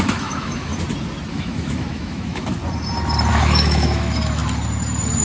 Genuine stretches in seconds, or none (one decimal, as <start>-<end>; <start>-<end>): 0.7-1.3; 2.6-3.3; 4.4-5.2